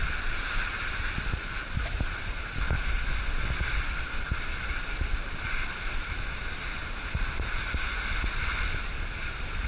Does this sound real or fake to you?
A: real